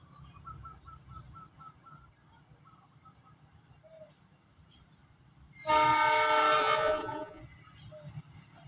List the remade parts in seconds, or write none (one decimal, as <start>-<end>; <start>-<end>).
6.6-7.4